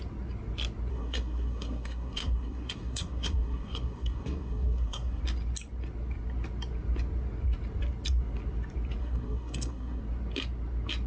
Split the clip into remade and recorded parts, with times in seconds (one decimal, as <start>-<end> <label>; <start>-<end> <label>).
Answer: 0.0-0.9 recorded; 0.9-5.2 remade; 5.2-9.0 recorded; 9.0-10.0 remade; 10.0-11.1 recorded